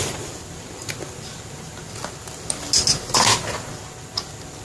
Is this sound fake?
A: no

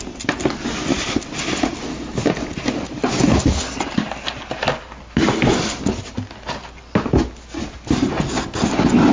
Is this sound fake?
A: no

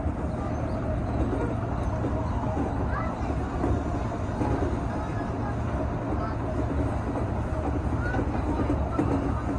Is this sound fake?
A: no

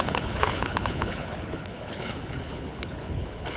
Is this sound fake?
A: yes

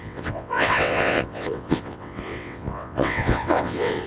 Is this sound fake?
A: yes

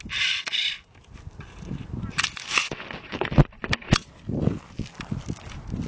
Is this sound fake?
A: no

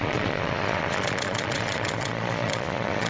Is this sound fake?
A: yes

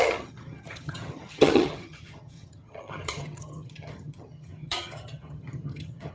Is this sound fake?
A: yes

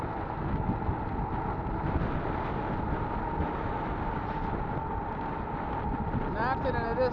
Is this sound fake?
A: no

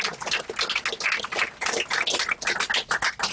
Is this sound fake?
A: no